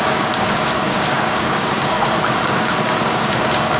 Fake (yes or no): yes